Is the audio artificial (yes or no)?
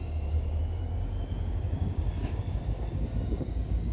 yes